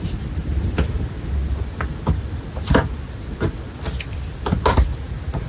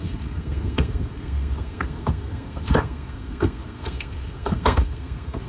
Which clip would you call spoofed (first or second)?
second